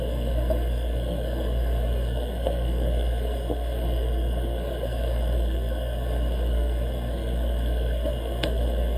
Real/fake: fake